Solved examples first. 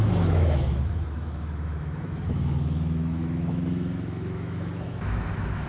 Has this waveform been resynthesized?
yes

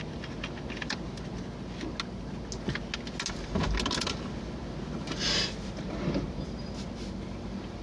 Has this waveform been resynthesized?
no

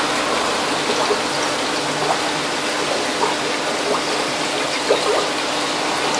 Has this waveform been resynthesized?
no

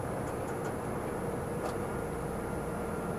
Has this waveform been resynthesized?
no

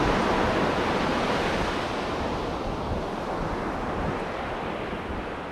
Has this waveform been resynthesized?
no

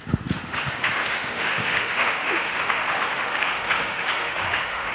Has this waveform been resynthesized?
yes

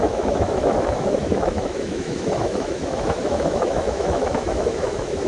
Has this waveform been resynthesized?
yes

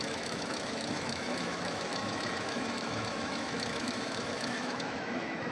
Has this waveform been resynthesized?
yes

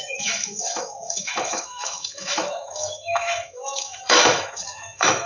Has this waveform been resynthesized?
yes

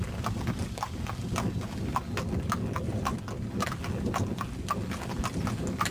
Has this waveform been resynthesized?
no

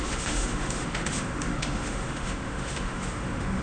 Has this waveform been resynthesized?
yes